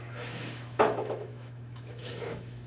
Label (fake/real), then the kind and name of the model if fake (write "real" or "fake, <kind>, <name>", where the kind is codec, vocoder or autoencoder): fake, autoencoder, DAC-VAE